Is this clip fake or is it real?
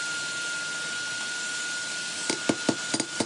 real